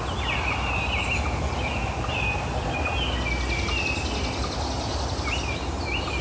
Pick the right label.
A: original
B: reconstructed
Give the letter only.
A